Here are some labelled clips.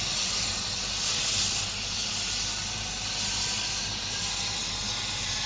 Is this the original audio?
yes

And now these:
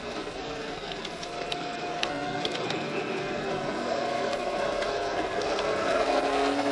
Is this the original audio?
no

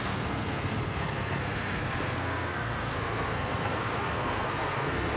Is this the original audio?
no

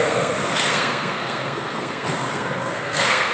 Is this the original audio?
no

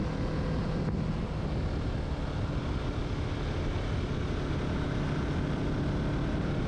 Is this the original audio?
yes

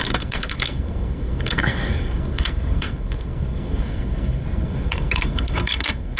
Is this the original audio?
no